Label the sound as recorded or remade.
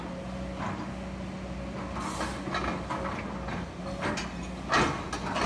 recorded